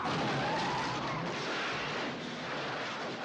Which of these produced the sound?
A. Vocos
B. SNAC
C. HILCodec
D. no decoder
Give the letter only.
D